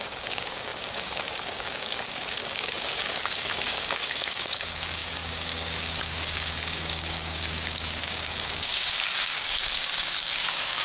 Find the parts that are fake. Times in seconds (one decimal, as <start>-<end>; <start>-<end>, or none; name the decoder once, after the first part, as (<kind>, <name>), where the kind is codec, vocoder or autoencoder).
0.0-10.8 (codec, DAC)